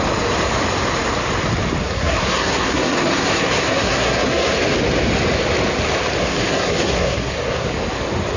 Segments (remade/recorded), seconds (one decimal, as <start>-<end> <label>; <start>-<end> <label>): 0.0-1.8 recorded; 1.8-4.5 remade; 4.5-6.2 recorded; 6.2-7.7 remade; 7.7-8.4 recorded